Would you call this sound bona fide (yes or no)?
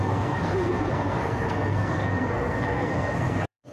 no